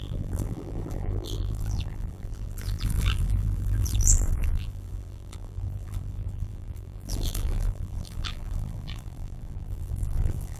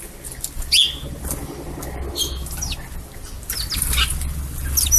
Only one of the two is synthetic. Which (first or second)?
first